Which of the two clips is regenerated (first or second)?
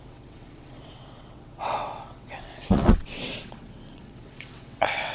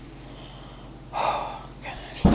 first